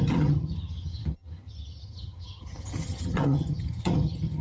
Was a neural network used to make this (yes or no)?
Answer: yes